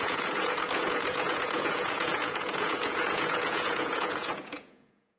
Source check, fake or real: fake